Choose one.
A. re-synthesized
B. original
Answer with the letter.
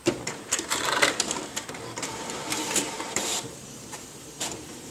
A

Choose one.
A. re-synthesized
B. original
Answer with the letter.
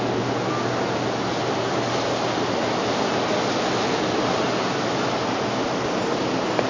B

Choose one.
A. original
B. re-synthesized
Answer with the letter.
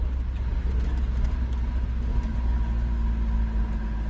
A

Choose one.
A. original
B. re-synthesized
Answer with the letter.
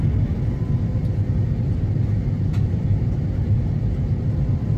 A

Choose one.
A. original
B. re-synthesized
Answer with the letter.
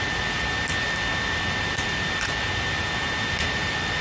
B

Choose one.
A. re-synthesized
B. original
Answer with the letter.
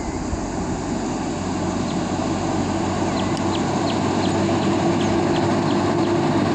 B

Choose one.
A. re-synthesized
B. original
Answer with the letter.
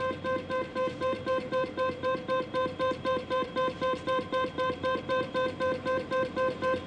A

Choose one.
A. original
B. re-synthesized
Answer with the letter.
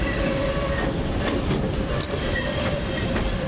B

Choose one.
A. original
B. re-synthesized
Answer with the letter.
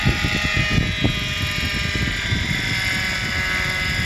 A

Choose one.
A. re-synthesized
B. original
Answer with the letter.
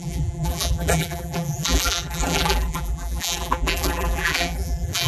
A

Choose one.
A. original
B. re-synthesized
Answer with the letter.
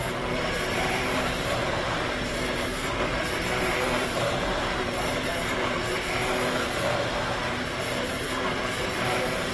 B